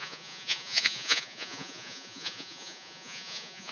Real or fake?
fake